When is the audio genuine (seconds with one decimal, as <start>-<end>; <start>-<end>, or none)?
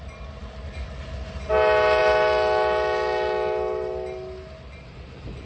0.0-5.5